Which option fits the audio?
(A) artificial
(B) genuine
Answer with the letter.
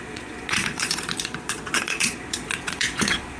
A